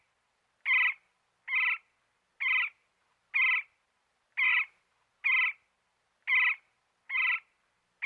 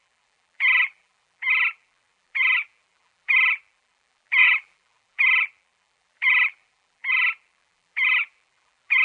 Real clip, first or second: first